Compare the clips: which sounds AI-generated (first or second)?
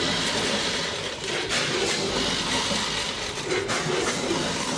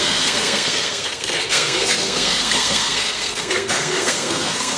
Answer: second